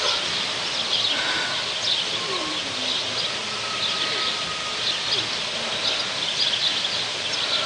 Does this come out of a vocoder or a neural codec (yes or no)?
no